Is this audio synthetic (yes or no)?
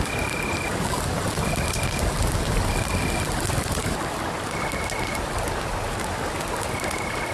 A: no